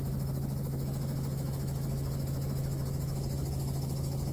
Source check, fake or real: fake